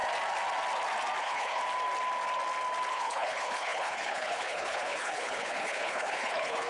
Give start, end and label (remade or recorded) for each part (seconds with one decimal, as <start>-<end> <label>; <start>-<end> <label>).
0.0-1.2 recorded; 1.2-1.6 remade; 1.6-2.9 recorded; 2.9-6.7 remade